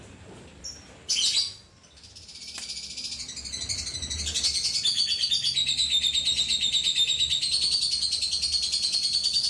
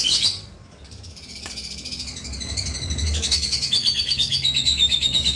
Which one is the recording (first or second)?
first